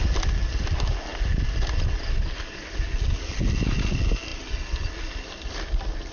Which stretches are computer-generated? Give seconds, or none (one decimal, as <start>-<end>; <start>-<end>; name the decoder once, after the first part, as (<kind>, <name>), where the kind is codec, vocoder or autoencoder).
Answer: none